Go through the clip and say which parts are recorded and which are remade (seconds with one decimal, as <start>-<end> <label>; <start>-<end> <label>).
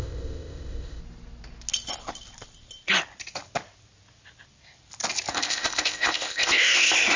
0.0-1.0 remade; 1.0-5.3 recorded; 5.3-7.2 remade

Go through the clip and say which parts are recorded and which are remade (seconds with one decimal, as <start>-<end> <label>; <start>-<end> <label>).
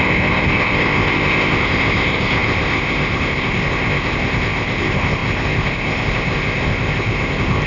0.0-7.7 remade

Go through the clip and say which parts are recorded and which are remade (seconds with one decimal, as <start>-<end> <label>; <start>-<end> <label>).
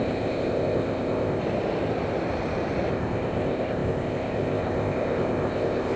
0.0-1.4 remade; 1.4-2.9 recorded; 2.9-6.0 remade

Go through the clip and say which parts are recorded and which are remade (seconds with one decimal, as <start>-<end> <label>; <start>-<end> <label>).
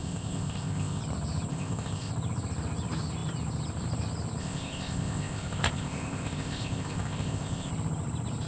0.0-1.0 remade; 1.0-1.5 recorded; 1.5-2.1 remade; 2.1-4.4 recorded; 4.4-7.7 remade; 7.7-8.5 recorded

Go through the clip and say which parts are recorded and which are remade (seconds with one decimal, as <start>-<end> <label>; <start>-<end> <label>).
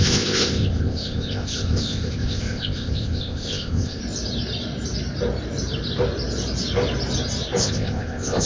0.0-4.0 remade; 4.0-7.6 recorded; 7.6-8.5 remade